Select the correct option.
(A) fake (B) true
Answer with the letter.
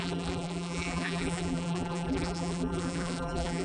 A